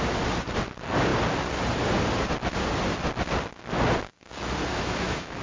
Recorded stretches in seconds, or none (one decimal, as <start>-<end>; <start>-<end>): 0.0-4.7